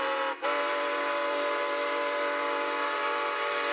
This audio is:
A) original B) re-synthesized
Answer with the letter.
A